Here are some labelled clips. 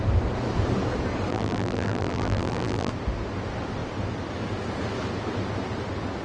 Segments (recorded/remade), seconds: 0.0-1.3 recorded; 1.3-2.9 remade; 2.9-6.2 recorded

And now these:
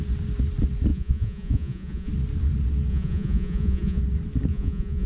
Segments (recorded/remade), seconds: 0.0-0.9 recorded; 0.9-2.1 remade; 2.1-2.9 recorded; 2.9-4.0 remade; 4.0-4.5 recorded; 4.5-5.1 remade

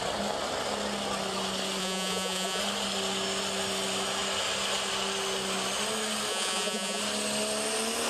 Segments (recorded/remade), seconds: 0.0-1.8 recorded; 1.8-2.6 remade; 2.6-6.3 recorded; 6.3-7.0 remade; 7.0-8.1 recorded